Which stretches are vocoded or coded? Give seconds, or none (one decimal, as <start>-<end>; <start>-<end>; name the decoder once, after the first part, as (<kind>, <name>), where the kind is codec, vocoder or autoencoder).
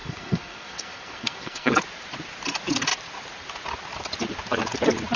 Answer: 0.0-1.7 (codec, SNAC)